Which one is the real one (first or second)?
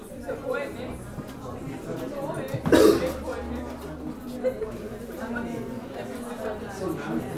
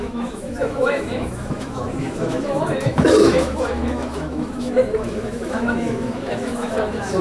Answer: first